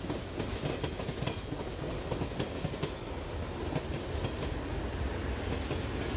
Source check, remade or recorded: recorded